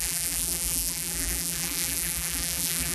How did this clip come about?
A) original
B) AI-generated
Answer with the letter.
B